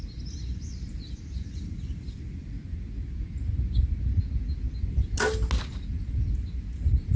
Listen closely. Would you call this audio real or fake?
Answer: real